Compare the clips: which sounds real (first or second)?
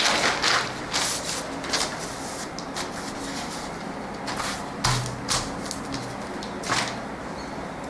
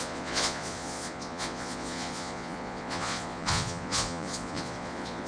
first